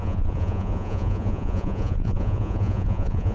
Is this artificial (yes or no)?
yes